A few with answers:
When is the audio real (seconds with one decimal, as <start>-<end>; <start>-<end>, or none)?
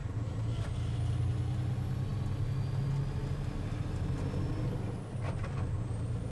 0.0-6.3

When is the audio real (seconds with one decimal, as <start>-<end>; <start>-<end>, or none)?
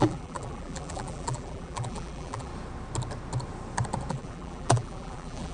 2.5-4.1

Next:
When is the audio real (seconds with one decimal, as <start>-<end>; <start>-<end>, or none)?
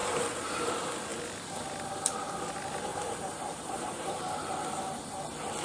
0.7-2.9; 4.2-5.6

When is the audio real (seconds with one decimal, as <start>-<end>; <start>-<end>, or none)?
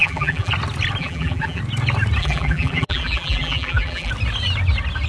0.5-1.0; 1.6-2.2; 4.1-5.1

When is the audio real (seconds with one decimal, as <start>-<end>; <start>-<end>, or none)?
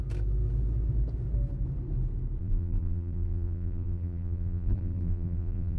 0.0-2.4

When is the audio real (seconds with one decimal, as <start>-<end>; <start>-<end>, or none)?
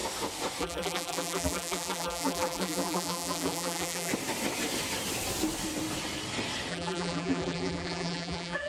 0.0-0.6; 4.1-6.7